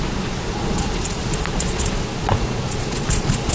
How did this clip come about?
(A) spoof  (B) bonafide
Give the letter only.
A